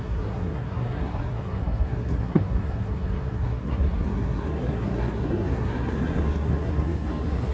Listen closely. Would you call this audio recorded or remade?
remade